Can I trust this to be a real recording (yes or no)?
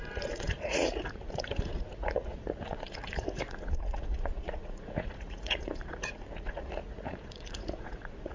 no